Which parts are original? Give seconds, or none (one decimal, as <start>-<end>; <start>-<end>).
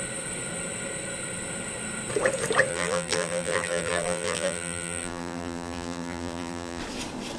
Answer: 0.0-2.7; 6.8-7.4